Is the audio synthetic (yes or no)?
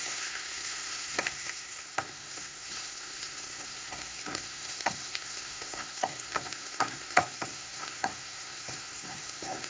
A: yes